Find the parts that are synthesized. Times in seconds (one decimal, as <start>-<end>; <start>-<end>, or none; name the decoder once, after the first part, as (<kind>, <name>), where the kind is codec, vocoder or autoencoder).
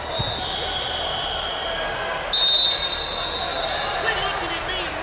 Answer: none